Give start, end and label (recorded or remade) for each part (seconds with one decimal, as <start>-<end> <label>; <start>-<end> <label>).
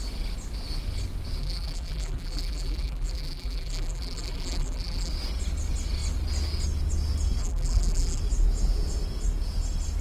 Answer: 0.0-1.4 recorded; 1.4-5.1 remade; 5.1-7.4 recorded; 7.4-8.2 remade; 8.2-10.0 recorded